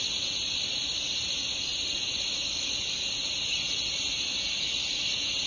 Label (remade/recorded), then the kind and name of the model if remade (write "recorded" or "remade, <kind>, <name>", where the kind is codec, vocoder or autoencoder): recorded